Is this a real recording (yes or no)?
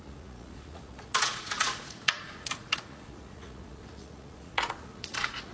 no